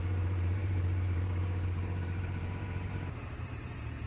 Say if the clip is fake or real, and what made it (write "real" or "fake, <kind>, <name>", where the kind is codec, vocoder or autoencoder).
fake, vocoder, BigVGAN v2